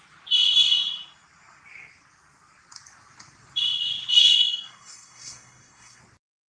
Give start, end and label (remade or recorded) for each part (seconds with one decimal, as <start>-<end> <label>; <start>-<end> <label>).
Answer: 0.0-4.2 recorded; 4.2-6.0 remade; 6.0-6.5 recorded